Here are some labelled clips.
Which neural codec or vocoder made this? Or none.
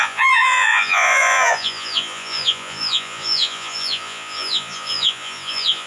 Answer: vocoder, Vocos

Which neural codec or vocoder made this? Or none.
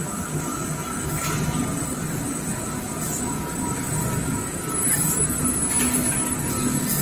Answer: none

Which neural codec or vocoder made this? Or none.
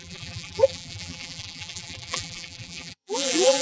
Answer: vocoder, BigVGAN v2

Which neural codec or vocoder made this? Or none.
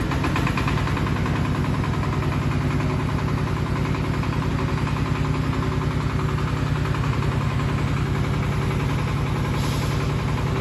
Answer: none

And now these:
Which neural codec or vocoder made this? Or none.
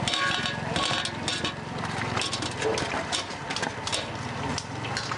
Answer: none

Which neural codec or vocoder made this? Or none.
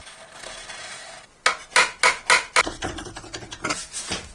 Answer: none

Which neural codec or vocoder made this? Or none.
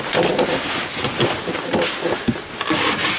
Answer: none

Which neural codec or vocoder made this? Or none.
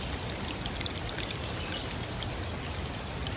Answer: none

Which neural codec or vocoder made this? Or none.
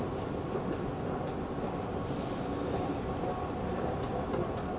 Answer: none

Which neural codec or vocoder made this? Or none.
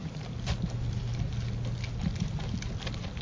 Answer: none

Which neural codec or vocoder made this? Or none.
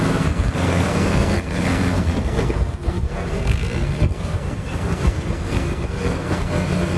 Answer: codec, SNAC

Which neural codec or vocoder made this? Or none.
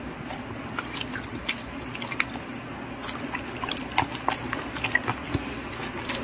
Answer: none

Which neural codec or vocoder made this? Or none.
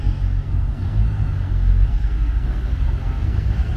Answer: codec, SNAC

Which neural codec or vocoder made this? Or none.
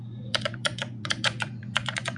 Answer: vocoder, Vocos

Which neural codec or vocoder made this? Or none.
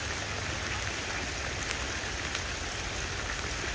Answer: none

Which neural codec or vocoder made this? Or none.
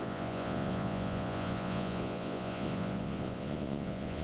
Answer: vocoder, Vocos